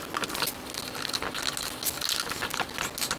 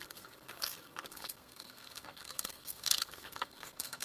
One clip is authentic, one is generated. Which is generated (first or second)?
second